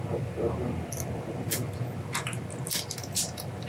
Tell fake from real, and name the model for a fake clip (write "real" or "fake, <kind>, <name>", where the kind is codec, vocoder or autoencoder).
real